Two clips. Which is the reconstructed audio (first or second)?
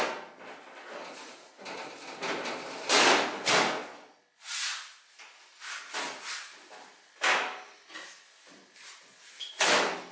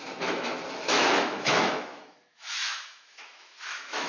second